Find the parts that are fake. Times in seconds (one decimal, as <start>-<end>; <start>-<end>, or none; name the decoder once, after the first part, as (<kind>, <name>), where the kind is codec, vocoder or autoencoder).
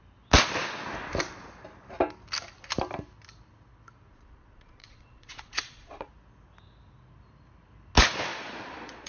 4.1-6.1 (vocoder, Vocos); 8.3-9.1